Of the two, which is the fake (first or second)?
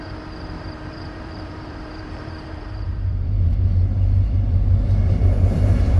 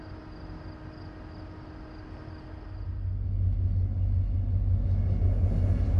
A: first